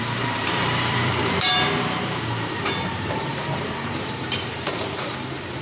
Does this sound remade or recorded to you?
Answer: remade